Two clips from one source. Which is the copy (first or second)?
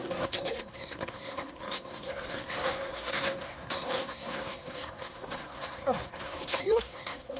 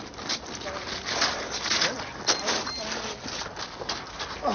first